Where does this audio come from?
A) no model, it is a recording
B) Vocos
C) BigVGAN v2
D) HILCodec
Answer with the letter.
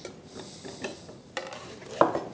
A